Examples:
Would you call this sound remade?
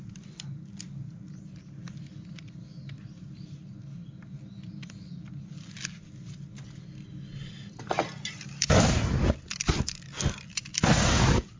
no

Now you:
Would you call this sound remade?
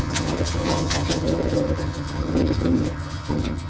yes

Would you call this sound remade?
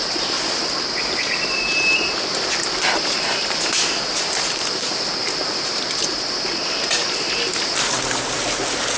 no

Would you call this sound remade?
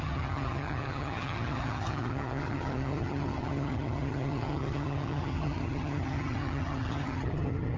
yes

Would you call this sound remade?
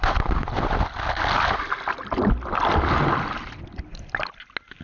no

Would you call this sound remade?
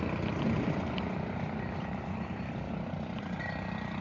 no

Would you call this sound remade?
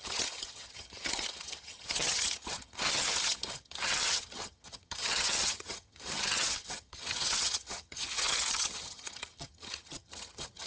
yes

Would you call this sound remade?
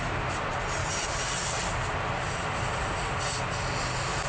no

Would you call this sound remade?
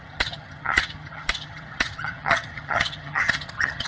yes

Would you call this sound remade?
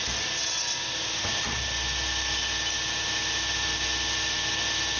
no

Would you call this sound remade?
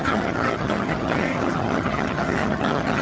yes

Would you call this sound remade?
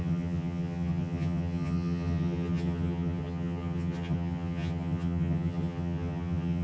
yes